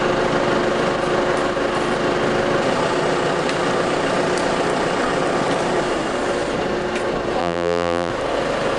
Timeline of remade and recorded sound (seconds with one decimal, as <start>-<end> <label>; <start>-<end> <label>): 0.0-7.4 recorded; 7.4-8.1 remade; 8.1-8.8 recorded